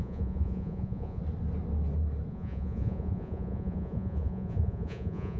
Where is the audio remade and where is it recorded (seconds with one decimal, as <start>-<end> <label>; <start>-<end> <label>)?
0.0-1.2 remade; 1.2-2.3 recorded; 2.3-5.4 remade

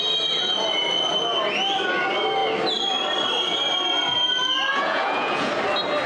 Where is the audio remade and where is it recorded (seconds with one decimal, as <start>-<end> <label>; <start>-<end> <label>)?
0.0-4.7 recorded; 4.7-5.5 remade; 5.5-6.1 recorded

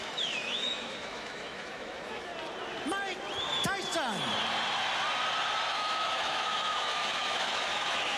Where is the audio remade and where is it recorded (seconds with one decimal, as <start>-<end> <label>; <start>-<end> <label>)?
0.0-2.3 remade; 2.3-5.7 recorded; 5.7-8.2 remade

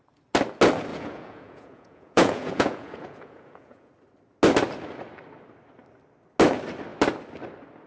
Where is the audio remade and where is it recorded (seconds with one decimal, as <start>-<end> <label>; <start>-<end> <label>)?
0.0-0.9 recorded; 0.9-3.9 remade; 3.9-7.9 recorded

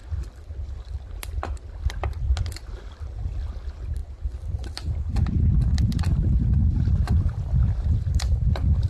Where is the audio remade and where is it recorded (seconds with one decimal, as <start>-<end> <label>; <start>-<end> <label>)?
0.0-8.9 recorded

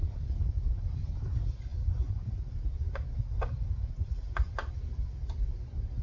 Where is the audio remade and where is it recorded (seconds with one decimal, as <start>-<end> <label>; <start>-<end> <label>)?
0.0-6.0 recorded

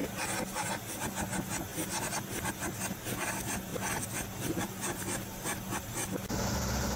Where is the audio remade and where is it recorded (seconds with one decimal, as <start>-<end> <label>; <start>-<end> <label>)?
0.0-7.0 recorded